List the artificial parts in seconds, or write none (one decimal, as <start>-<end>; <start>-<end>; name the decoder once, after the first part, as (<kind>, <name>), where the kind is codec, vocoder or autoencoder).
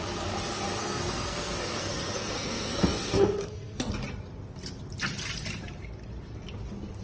0.8-3.9 (codec, SNAC)